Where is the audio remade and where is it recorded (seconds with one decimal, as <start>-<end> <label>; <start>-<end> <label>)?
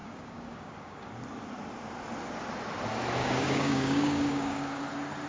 0.0-1.1 remade; 1.1-3.2 recorded; 3.2-4.8 remade; 4.8-5.3 recorded